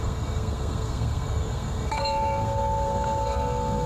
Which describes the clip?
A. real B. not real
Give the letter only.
B